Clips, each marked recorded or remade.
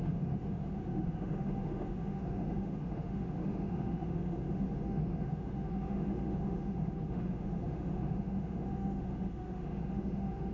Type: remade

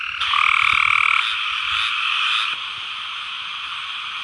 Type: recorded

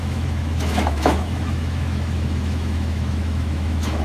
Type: remade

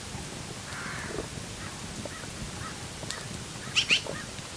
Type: recorded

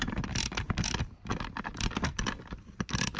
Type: recorded